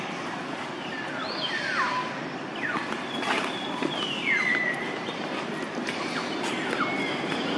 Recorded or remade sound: recorded